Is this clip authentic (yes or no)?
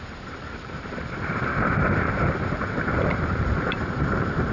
no